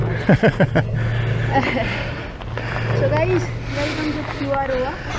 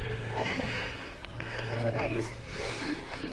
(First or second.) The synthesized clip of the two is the second